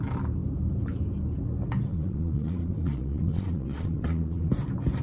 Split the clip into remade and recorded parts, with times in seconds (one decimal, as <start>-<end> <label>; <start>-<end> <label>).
0.0-1.9 recorded; 1.9-4.5 remade; 4.5-5.0 recorded